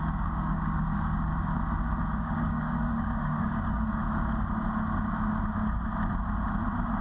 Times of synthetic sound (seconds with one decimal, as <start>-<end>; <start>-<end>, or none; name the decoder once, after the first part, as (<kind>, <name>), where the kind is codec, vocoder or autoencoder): 0.0-1.3 (codec, DAC); 2.0-4.0